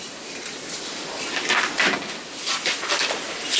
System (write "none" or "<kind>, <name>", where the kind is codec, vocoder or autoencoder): none